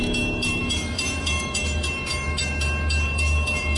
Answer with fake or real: fake